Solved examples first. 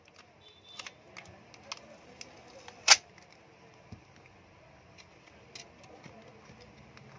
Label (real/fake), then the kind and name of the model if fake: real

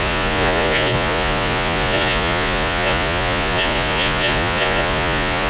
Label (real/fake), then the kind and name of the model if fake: fake, vocoder, Vocos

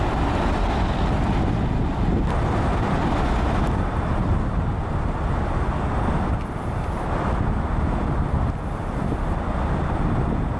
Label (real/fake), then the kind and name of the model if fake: real